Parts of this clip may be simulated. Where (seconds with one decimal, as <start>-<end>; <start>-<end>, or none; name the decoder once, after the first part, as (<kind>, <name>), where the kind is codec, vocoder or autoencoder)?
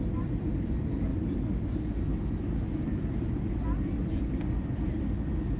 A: 0.0-5.6 (vocoder, BigVGAN v2)